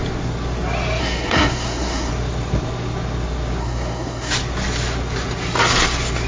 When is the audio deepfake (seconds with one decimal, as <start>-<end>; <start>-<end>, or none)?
1.0-2.1; 3.6-4.3